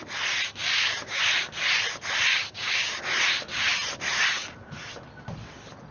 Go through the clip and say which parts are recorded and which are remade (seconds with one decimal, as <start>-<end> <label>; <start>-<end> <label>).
0.0-0.7 recorded; 0.7-1.2 remade; 1.2-2.3 recorded; 2.3-3.0 remade; 3.0-5.9 recorded